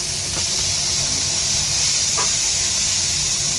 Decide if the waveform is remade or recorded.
recorded